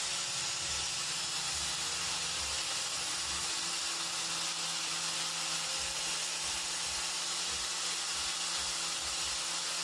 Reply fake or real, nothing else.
real